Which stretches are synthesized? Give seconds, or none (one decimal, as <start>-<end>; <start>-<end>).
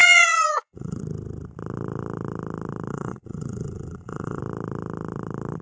0.0-1.0; 2.9-4.4